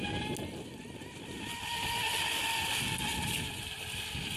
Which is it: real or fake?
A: real